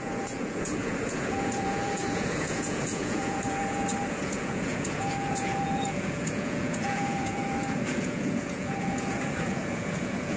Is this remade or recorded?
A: remade